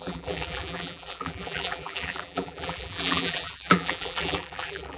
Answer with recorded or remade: remade